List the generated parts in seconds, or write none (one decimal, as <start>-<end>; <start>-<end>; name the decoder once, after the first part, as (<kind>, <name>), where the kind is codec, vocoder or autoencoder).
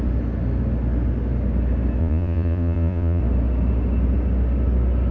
2.0-3.2 (vocoder, Vocos)